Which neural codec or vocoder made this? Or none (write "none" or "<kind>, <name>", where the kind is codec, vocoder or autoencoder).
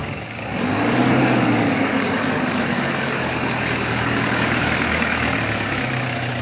codec, DAC